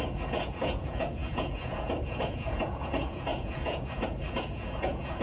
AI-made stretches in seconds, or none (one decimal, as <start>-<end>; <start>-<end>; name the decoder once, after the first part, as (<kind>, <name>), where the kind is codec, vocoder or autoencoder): 0.0-5.2 (vocoder, Vocos)